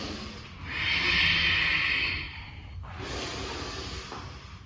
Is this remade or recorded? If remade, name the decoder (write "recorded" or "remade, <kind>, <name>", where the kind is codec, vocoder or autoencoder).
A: recorded